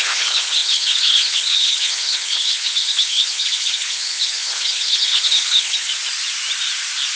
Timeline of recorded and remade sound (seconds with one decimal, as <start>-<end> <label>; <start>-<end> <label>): 0.0-5.9 remade; 5.9-7.2 recorded